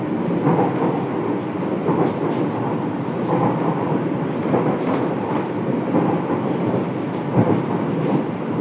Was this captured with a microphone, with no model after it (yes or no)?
yes